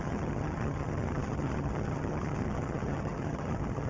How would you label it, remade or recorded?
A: remade